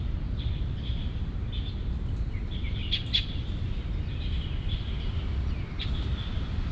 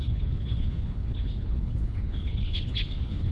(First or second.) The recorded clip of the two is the first